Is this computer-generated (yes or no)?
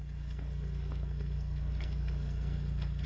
yes